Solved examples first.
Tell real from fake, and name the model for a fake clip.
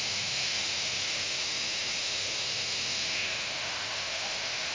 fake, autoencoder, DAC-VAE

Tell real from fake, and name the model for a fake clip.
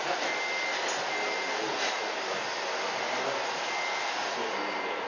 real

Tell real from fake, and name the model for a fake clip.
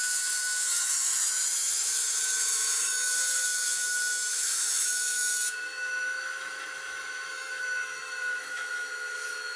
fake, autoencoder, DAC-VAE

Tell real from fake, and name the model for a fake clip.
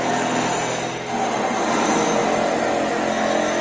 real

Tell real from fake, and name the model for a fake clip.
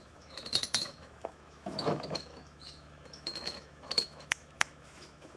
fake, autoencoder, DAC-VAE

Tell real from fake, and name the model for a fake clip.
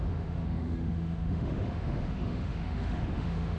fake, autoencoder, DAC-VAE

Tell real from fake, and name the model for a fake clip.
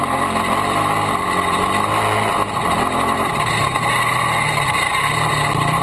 real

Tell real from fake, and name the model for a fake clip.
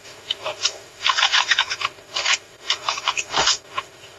fake, autoencoder, DAC-VAE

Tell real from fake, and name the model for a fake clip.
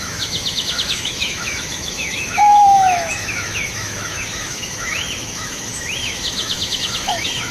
fake, autoencoder, DAC-VAE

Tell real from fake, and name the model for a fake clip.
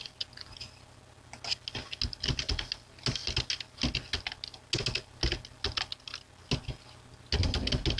real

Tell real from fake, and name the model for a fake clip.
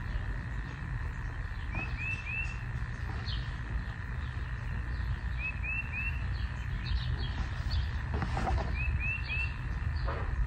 real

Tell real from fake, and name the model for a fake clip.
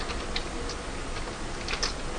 real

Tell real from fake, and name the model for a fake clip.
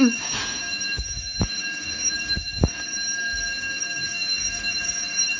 fake, autoencoder, DAC-VAE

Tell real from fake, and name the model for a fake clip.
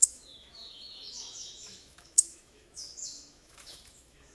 fake, autoencoder, DAC-VAE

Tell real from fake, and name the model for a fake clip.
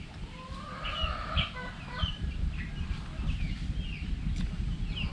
real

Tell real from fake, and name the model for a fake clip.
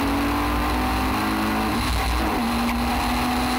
real